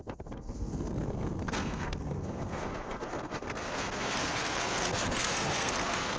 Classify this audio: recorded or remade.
remade